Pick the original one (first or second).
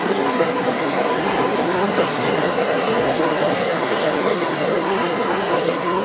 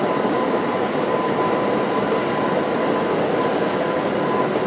second